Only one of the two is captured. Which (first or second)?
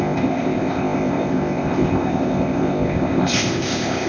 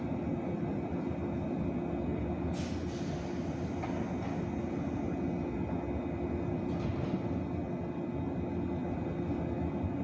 second